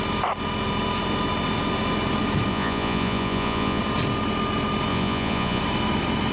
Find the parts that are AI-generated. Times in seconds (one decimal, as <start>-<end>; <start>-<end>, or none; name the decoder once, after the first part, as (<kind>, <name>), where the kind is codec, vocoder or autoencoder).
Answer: 2.5-3.8 (vocoder, Vocos); 4.9-5.6